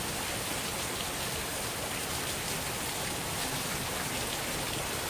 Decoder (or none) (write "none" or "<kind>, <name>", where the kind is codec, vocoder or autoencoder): none